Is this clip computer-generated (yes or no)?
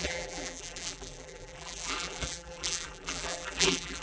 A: yes